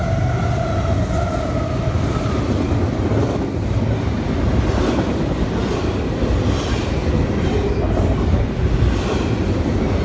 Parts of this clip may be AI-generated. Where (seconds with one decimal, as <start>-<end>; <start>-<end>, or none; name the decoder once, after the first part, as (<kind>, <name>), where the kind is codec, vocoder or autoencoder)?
none